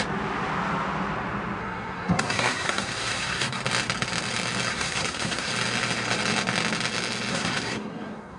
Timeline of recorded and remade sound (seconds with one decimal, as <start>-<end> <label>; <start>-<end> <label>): 0.0-1.6 recorded; 1.6-3.6 remade; 3.6-4.7 recorded; 4.7-5.5 remade; 5.5-7.3 recorded; 7.3-8.4 remade